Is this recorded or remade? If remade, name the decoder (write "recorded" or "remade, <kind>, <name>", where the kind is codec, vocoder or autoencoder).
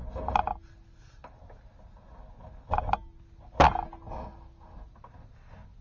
recorded